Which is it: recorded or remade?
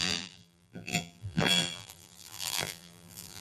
remade